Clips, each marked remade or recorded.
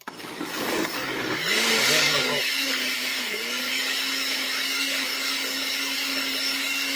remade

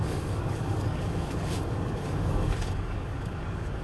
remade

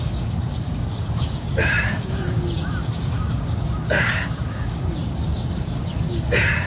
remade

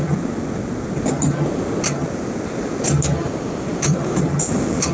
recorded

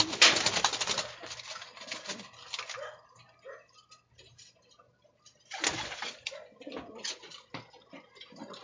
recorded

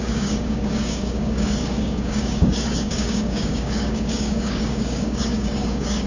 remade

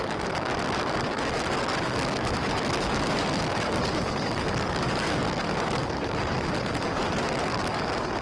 remade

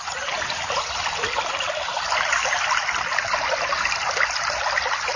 recorded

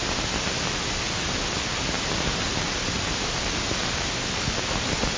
recorded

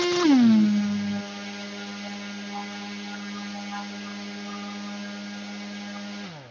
recorded